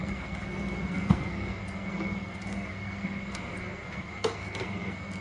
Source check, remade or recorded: remade